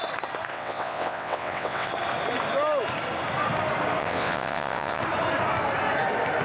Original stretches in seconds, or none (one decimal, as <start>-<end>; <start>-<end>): 0.0-0.5; 1.9-4.0; 5.0-6.4